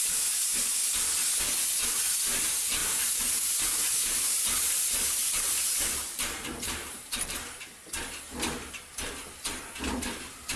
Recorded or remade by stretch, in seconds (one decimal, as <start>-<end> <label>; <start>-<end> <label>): 0.0-2.8 recorded; 2.8-7.6 remade; 7.6-10.6 recorded